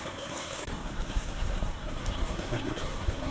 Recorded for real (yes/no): no